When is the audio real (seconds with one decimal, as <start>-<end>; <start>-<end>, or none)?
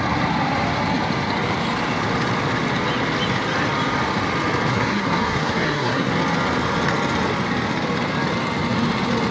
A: 0.0-4.7; 6.1-9.3